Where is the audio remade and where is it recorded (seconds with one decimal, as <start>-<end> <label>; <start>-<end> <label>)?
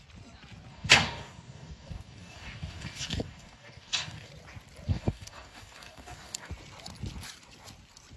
0.0-0.7 recorded; 0.7-4.3 remade; 4.3-4.9 recorded; 4.9-6.5 remade; 6.5-8.2 recorded